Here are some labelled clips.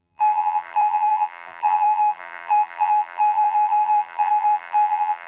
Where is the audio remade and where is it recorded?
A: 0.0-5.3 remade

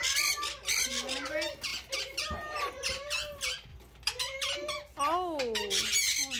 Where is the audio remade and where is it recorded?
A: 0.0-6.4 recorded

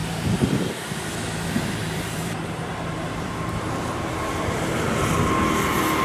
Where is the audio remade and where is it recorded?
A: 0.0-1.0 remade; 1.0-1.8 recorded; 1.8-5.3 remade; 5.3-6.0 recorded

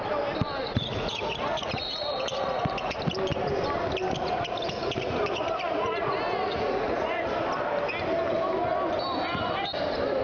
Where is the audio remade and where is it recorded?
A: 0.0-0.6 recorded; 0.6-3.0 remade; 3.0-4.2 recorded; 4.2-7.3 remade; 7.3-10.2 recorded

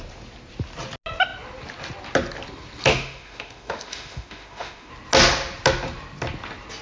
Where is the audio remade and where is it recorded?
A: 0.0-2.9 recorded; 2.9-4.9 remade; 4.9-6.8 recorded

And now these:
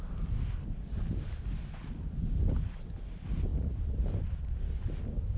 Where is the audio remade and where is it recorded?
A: 0.0-3.5 recorded; 3.5-4.3 remade; 4.3-5.4 recorded

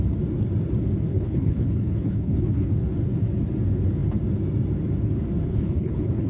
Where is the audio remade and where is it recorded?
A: 0.0-1.1 recorded; 1.1-2.7 remade; 2.7-5.5 recorded; 5.5-6.3 remade

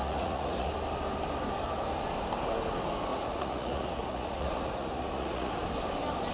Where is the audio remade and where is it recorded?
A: 0.0-0.7 remade; 0.7-3.1 recorded; 3.1-5.5 remade; 5.5-6.3 recorded